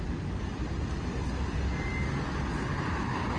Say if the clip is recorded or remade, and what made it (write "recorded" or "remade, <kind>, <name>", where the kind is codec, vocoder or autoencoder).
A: recorded